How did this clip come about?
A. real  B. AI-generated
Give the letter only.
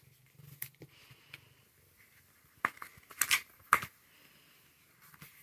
A